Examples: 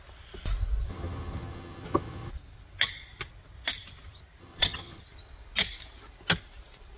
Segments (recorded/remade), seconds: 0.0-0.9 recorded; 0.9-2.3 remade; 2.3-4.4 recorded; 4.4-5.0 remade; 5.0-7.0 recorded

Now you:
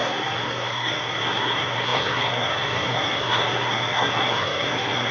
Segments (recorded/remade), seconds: 0.0-5.1 remade

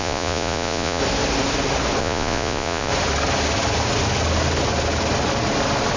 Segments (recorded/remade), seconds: 0.0-1.0 remade; 1.0-2.0 recorded; 2.0-2.9 remade; 2.9-6.0 recorded

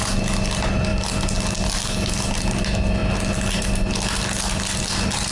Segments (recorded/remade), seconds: 0.0-5.3 recorded

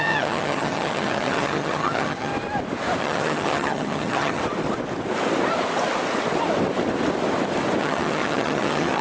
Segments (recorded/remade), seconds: 0.0-2.3 remade; 2.3-3.0 recorded; 3.0-4.4 remade; 4.4-7.8 recorded; 7.8-9.0 remade

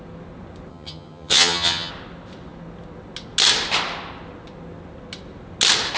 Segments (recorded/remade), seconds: 0.0-0.7 recorded; 0.7-1.9 remade; 1.9-6.0 recorded

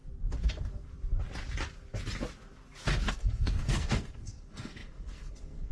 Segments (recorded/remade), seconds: 0.0-0.5 recorded; 0.5-0.9 remade; 0.9-3.1 recorded; 3.1-5.7 remade

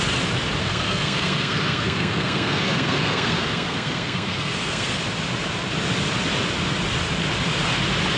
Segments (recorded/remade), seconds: 0.0-0.6 recorded; 0.6-5.0 remade; 5.0-8.2 recorded